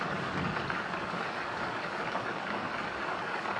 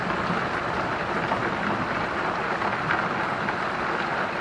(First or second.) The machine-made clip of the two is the first